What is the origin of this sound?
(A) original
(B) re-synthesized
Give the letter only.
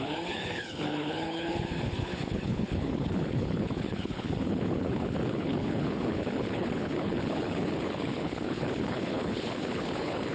B